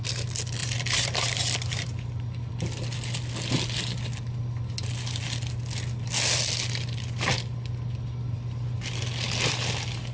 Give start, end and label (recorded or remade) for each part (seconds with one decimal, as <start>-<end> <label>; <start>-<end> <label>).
0.0-0.6 recorded; 0.6-2.5 remade; 2.5-10.1 recorded